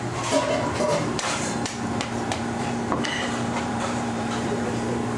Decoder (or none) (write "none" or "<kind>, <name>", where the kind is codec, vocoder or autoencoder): vocoder, BigVGAN v2